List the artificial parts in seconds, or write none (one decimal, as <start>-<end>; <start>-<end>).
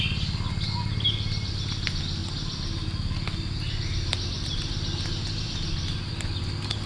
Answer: none